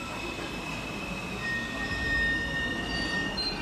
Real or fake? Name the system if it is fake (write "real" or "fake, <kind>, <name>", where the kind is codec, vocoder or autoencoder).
real